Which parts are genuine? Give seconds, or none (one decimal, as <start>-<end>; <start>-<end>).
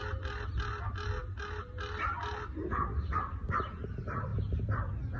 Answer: 0.0-5.2